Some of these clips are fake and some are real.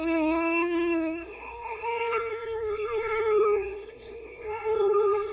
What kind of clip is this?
fake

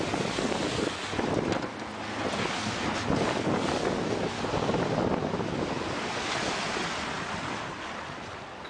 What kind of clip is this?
real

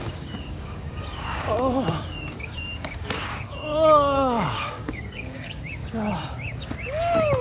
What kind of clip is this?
fake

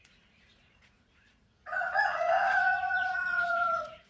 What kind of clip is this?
fake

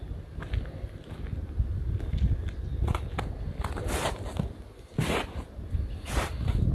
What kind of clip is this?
real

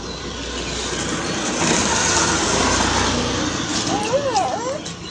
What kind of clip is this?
real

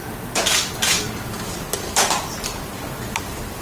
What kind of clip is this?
real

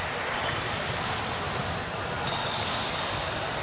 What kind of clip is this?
real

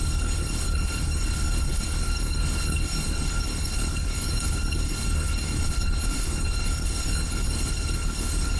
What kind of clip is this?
fake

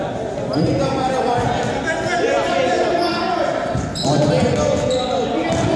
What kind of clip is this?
real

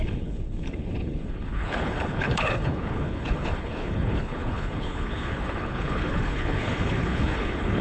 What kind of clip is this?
fake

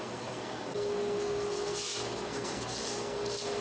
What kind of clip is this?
fake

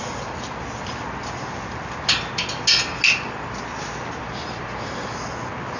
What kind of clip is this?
real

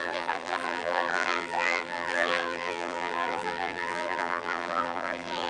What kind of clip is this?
fake